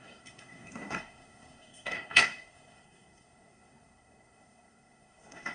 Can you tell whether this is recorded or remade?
remade